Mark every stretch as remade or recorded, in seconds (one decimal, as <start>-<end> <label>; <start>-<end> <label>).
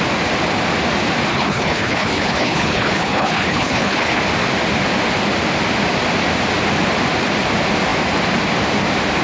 0.0-1.3 recorded; 1.3-4.2 remade; 4.2-9.2 recorded